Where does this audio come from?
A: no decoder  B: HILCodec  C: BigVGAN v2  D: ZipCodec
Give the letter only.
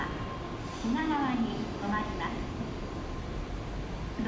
A